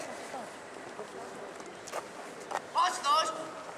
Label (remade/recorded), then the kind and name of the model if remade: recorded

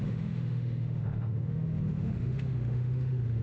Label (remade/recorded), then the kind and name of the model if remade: remade, autoencoder, DAC-VAE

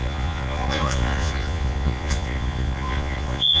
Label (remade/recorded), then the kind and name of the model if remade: remade, vocoder, Vocos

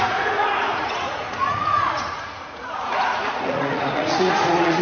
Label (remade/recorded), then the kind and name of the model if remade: remade, vocoder, Vocos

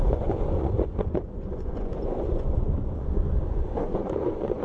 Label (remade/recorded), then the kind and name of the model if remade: remade, vocoder, Vocos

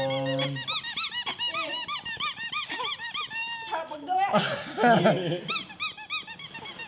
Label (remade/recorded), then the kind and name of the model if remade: recorded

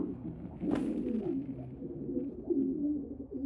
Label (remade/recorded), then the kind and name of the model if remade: recorded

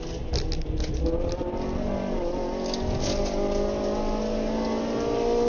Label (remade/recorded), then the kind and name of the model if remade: recorded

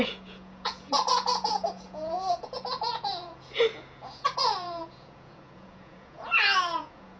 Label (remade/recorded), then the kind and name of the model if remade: remade, vocoder, Vocos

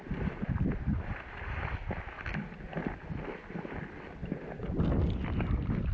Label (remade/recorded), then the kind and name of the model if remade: recorded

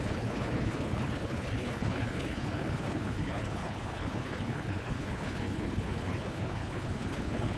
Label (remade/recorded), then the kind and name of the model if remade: remade, codec, HILCodec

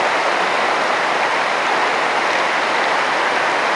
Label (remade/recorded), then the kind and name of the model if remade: recorded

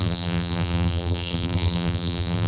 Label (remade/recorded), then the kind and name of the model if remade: remade, vocoder, BigVGAN v2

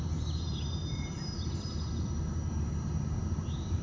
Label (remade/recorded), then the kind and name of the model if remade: remade, vocoder, BigVGAN v2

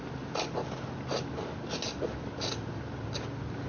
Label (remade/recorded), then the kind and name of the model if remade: recorded